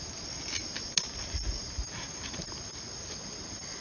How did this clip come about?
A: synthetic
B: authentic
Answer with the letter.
B